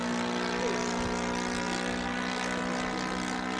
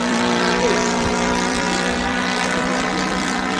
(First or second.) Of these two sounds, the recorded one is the first